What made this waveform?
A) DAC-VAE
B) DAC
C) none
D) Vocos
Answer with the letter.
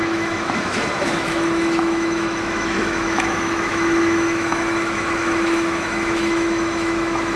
A